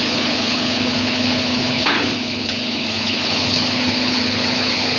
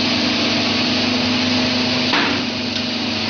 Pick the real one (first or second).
second